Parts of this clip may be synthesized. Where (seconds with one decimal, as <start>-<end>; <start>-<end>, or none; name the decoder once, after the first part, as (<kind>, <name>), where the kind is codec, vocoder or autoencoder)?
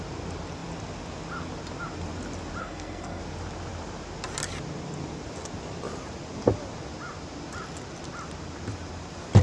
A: 2.6-3.2 (codec, SNAC)